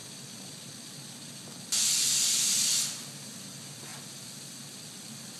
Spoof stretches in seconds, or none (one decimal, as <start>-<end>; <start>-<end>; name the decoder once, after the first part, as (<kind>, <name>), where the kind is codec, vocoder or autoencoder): none